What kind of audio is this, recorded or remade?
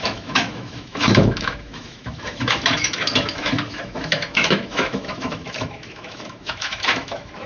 remade